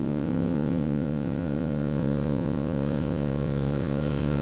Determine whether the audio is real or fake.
fake